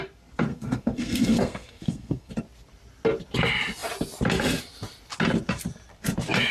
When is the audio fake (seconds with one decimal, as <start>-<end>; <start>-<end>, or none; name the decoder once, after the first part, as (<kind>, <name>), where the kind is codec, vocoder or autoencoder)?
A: 0.5-2.3 (codec, SNAC)